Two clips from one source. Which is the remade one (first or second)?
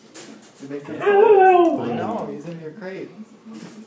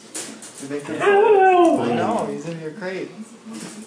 first